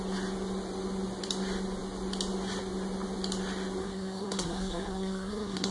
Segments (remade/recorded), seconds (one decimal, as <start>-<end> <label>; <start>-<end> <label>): 0.0-3.8 recorded; 3.8-5.7 remade

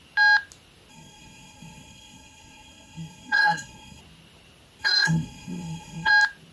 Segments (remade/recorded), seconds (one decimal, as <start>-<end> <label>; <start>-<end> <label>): 0.0-0.9 recorded; 0.9-4.0 remade; 4.0-4.8 recorded; 4.8-6.1 remade; 6.1-6.5 recorded

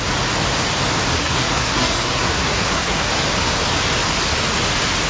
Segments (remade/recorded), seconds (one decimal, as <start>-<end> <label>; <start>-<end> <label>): 0.0-1.2 recorded; 1.2-3.1 remade; 3.1-5.1 recorded

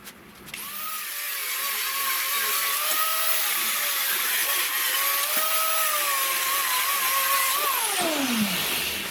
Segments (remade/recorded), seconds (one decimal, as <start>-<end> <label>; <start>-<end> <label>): 0.0-1.4 recorded; 1.4-4.7 remade; 4.7-9.1 recorded

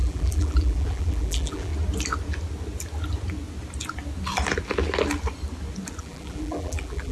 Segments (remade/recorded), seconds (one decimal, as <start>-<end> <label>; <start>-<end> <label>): 0.0-1.7 remade; 1.7-6.0 recorded; 6.0-7.1 remade

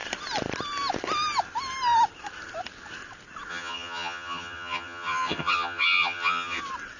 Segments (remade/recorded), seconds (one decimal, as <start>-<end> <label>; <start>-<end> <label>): 0.0-3.5 recorded; 3.5-6.6 remade; 6.6-7.0 recorded

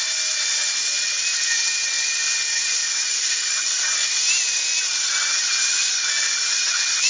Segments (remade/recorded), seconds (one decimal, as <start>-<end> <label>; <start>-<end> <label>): 0.0-2.8 recorded; 2.8-3.7 remade; 3.7-7.1 recorded